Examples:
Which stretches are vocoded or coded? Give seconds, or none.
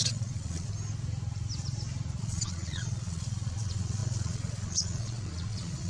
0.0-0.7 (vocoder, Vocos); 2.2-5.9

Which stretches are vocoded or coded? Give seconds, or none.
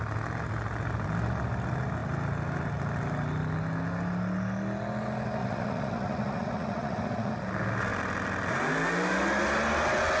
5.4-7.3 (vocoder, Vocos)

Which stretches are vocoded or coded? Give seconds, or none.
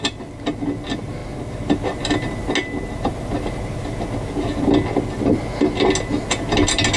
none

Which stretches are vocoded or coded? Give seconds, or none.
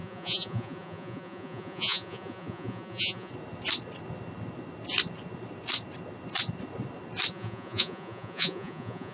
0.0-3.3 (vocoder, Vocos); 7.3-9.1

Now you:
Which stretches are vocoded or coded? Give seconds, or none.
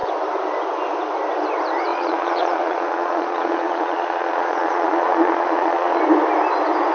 1.9-6.0 (vocoder, Vocos)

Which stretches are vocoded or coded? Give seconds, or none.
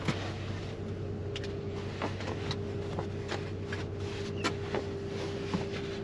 none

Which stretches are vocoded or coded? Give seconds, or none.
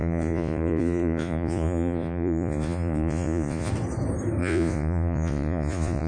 0.0-3.7 (vocoder, Vocos); 4.4-6.1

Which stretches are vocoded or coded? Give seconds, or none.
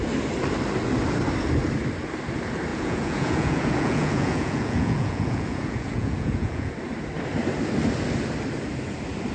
2.7-6.7 (vocoder, Vocos)